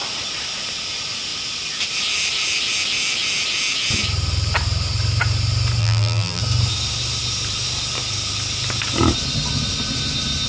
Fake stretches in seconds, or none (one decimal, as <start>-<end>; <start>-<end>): 5.8-6.4